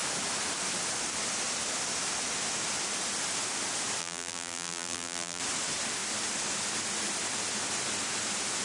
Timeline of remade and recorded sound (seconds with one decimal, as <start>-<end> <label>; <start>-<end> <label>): 0.0-4.0 recorded; 4.0-5.4 remade; 5.4-8.6 recorded

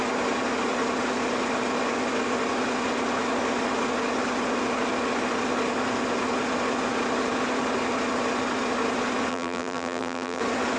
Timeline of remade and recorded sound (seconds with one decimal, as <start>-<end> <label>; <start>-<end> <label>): 0.0-9.3 recorded; 9.3-10.4 remade; 10.4-10.8 recorded

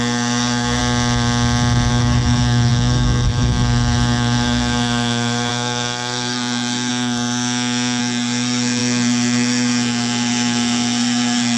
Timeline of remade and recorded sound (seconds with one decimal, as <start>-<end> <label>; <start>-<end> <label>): 0.0-0.8 remade; 0.8-1.9 recorded; 1.9-6.9 remade; 6.9-8.0 recorded; 8.0-11.6 remade

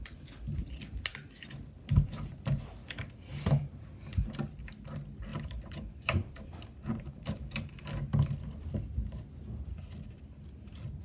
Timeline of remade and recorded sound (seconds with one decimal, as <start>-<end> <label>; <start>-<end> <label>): 0.0-5.3 recorded; 5.3-7.8 remade; 7.8-11.0 recorded

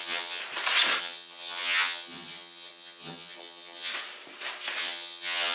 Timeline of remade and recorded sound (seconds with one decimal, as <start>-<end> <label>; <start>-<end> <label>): 0.0-0.4 remade; 0.4-1.0 recorded; 1.0-3.9 remade; 3.9-4.8 recorded; 4.8-5.5 remade

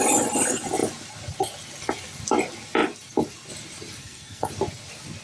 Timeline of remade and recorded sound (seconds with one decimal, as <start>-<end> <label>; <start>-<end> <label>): 0.0-4.0 recorded; 4.0-4.5 remade; 4.5-5.2 recorded

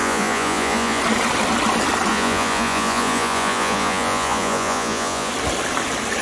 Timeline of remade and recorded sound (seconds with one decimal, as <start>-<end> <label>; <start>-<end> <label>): 0.0-1.0 remade; 1.0-2.1 recorded; 2.1-5.3 remade; 5.3-6.2 recorded